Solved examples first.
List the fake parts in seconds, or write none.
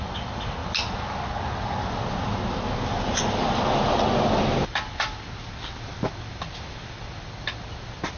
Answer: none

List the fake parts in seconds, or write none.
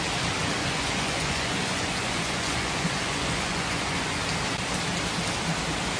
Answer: 0.6-4.2 (vocoder, Vocos)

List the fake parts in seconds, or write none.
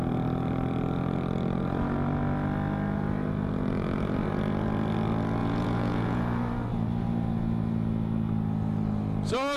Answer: 5.4-6.2 (vocoder, Vocos)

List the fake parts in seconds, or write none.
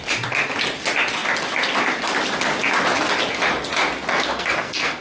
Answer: 4.1-5.0 (codec, SNAC)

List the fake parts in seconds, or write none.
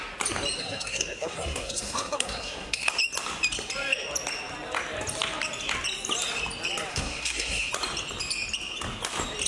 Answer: 0.6-2.9 (codec, SNAC); 6.9-7.7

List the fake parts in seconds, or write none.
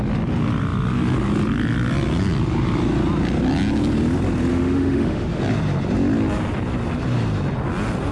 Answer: 4.5-5.4 (autoencoder, DAC-VAE)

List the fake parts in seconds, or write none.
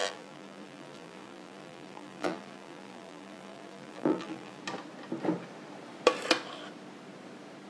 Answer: 0.0-4.6 (vocoder, BigVGAN v2)